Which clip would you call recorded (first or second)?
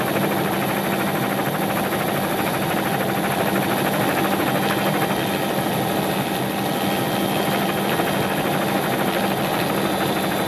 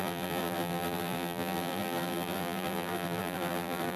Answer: first